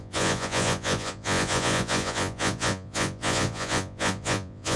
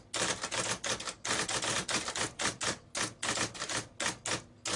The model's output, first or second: first